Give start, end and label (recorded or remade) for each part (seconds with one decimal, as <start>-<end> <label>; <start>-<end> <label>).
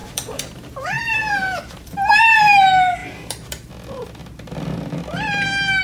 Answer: 0.0-2.4 remade; 2.4-3.0 recorded; 3.0-3.7 remade; 3.7-5.8 recorded